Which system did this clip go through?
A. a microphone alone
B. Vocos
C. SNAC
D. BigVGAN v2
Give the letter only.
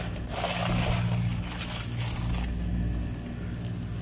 A